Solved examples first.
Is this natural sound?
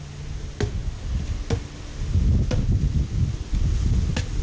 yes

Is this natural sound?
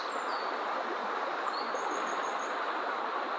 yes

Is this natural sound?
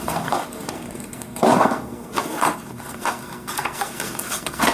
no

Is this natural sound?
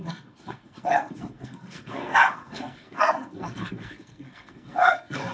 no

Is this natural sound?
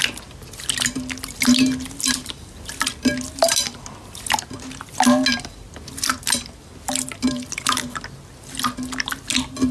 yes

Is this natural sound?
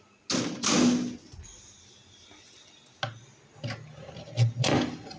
yes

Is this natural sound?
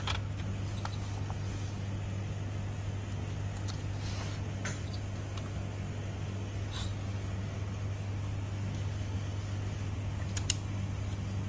yes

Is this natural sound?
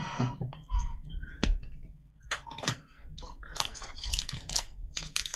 no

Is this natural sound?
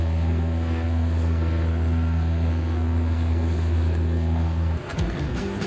no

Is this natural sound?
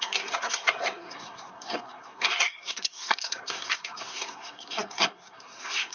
no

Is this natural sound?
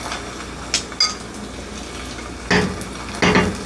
yes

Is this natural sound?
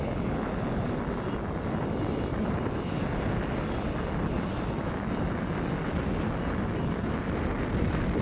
yes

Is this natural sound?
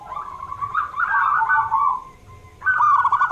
yes